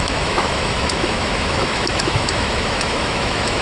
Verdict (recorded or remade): remade